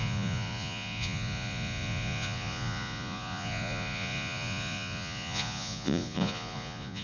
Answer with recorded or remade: remade